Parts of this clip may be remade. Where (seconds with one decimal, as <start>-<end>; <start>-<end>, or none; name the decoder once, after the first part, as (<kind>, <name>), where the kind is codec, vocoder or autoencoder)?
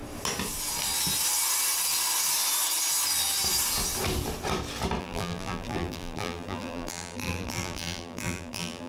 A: 5.0-8.9 (vocoder, BigVGAN v2)